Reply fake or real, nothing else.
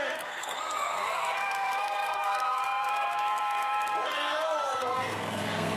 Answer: fake